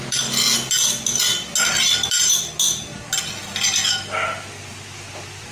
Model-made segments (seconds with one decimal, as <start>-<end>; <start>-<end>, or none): none